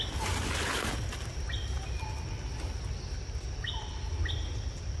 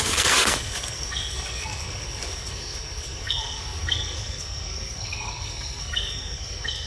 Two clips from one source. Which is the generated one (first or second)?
second